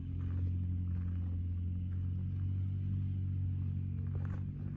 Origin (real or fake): real